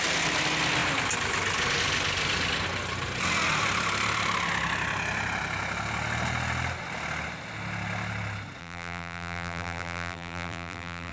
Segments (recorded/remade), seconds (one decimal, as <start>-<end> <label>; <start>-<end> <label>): 0.0-8.6 recorded; 8.6-11.1 remade